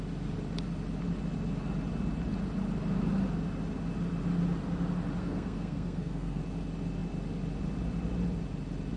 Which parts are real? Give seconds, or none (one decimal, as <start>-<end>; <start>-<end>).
0.0-5.2; 6.4-9.0